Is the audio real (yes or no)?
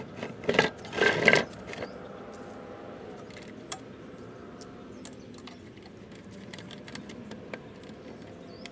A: yes